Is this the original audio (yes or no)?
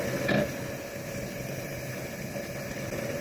yes